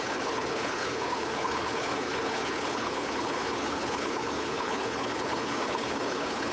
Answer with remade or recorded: remade